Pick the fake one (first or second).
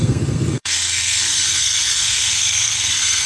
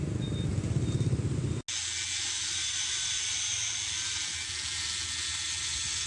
first